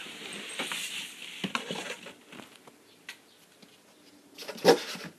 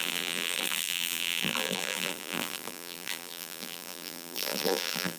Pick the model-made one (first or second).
second